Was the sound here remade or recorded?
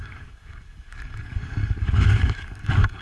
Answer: remade